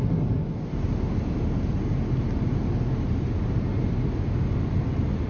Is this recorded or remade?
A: recorded